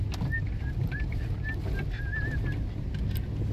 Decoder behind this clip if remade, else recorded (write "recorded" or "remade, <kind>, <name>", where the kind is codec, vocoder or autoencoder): recorded